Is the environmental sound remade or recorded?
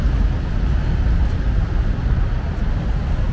recorded